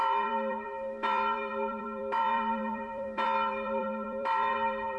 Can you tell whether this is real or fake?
fake